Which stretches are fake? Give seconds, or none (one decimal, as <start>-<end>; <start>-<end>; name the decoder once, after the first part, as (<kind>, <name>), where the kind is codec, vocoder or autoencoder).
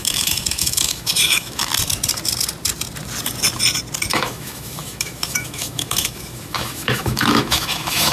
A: 0.0-1.7 (autoencoder, DAC-VAE); 4.1-8.1